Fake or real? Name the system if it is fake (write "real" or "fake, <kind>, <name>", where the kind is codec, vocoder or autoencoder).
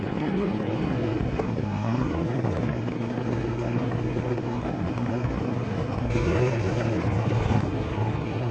fake, codec, SNAC